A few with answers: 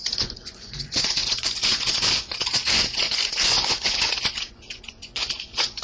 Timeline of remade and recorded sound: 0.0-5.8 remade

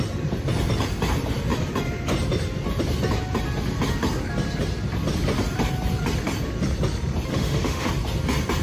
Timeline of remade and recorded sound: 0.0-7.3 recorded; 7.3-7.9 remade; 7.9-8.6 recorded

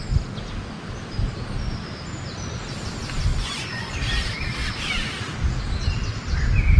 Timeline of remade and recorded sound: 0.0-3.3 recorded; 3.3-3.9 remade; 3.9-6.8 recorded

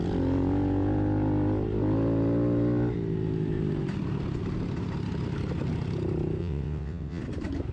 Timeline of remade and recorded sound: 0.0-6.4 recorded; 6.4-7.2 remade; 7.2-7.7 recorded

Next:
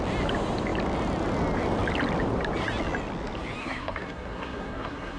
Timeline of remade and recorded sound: 0.0-3.6 recorded; 3.6-5.2 remade

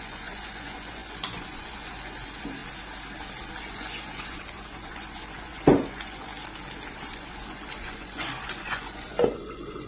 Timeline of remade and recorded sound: 0.0-2.6 remade; 2.6-3.6 recorded; 3.6-6.3 remade; 6.3-6.9 recorded; 6.9-9.9 remade